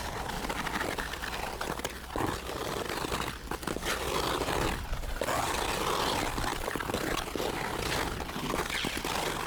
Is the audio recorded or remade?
recorded